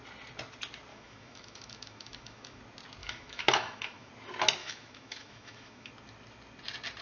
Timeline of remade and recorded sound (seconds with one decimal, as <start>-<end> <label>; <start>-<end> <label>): 0.0-0.9 recorded; 0.9-2.6 remade; 2.6-3.0 recorded; 3.0-4.1 remade; 4.1-4.6 recorded; 4.6-5.9 remade; 5.9-7.0 recorded

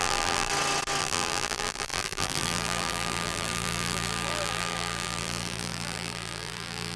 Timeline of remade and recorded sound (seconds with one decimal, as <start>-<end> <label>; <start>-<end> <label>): 0.0-0.5 remade; 0.5-1.0 recorded; 1.0-7.0 remade

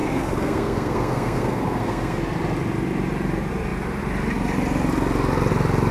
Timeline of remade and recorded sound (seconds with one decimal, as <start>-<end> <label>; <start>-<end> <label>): 0.0-2.2 remade; 2.2-5.9 recorded

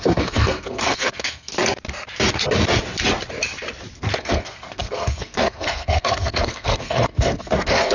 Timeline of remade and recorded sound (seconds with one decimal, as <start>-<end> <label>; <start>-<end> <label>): 0.0-1.5 remade; 1.5-4.2 recorded; 4.2-7.9 remade

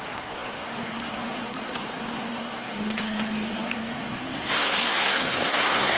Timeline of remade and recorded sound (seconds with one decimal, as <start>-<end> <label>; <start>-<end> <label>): 0.0-6.0 remade

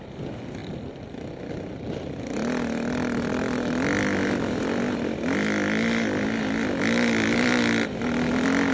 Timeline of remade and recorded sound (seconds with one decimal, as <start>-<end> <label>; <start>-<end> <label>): 0.0-8.7 recorded